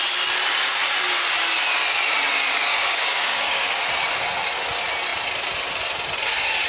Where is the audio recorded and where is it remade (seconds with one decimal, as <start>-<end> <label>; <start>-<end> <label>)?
0.0-2.7 recorded; 2.7-3.8 remade; 3.8-6.7 recorded